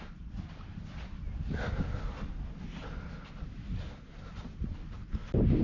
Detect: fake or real real